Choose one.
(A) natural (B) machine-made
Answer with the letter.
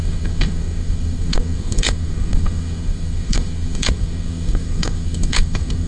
B